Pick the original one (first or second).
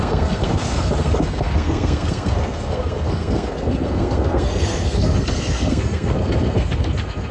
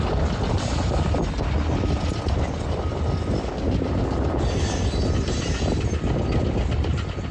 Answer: second